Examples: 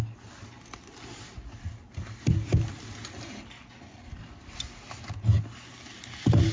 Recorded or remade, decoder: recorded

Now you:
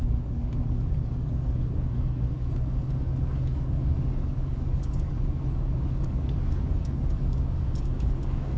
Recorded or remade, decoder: remade, codec, DAC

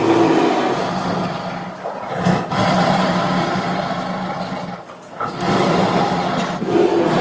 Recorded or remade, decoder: recorded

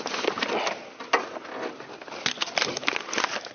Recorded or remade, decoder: recorded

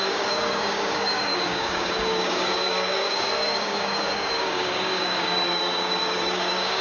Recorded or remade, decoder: remade, codec, DAC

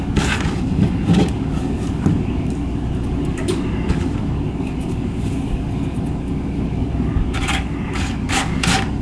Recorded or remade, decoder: remade, codec, DAC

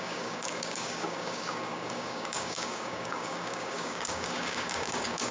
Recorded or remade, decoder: remade, codec, DAC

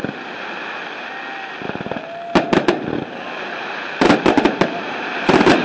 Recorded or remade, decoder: recorded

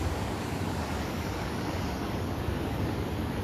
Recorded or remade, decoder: remade, codec, DAC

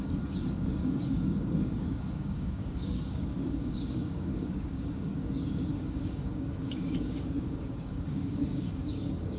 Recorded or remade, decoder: remade, codec, DAC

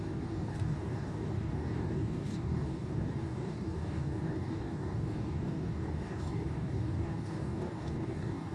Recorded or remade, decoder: remade, codec, DAC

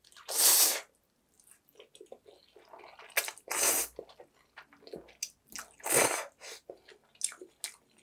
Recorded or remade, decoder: recorded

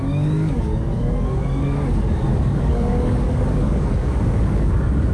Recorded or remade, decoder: remade, codec, DAC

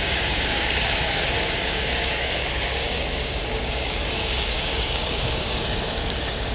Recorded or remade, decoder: remade, codec, DAC